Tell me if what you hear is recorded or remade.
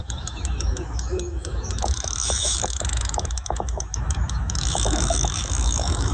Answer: remade